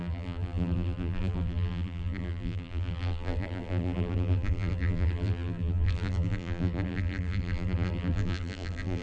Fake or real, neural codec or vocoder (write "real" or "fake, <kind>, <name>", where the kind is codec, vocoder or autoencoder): fake, vocoder, BigVGAN v2